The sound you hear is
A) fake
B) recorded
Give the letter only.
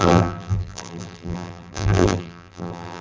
A